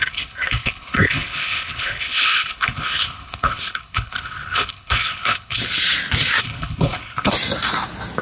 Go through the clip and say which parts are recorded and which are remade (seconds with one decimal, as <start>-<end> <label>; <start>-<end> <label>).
0.0-5.6 remade; 5.6-6.4 recorded; 6.4-7.3 remade; 7.3-8.2 recorded